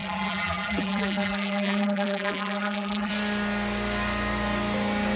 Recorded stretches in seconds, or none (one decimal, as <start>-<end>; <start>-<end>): 3.1-5.2